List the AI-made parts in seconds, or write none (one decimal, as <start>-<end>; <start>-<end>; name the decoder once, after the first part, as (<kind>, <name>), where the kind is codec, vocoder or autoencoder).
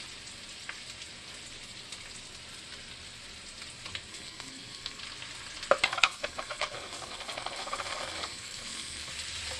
4.1-5.0 (codec, SNAC); 5.9-9.1